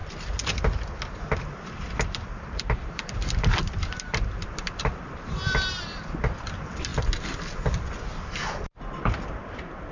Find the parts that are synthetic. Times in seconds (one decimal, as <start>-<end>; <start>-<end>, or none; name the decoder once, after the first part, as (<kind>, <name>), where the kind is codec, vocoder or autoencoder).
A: 1.2-6.9 (vocoder, BigVGAN v2); 9.1-9.9

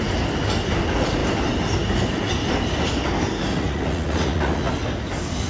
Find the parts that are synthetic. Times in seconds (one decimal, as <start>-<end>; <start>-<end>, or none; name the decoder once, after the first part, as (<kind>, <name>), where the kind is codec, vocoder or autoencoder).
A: 3.5-4.7 (vocoder, Vocos)